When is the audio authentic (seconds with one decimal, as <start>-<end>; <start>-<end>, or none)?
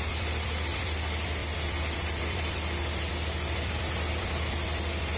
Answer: none